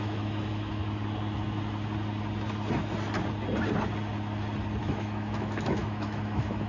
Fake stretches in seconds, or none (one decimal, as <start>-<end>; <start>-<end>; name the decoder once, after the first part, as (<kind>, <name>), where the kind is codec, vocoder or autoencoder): 0.0-0.8 (autoencoder, DAC-VAE); 4.8-6.7